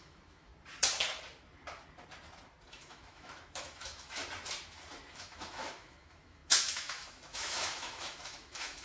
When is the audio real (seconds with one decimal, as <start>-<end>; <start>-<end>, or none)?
0.5-2.7; 4.2-5.1